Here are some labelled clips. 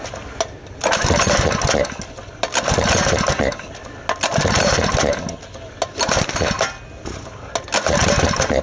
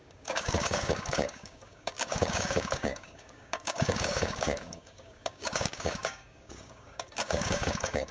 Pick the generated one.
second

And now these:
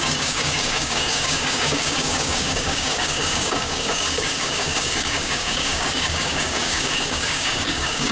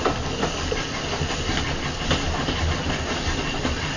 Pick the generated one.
first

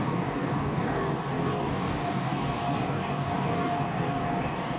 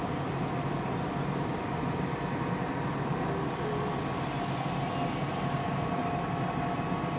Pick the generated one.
first